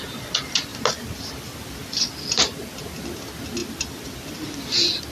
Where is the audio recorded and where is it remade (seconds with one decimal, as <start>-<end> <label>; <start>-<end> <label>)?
0.0-5.1 recorded